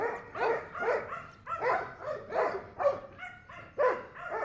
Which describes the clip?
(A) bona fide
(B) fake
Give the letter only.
A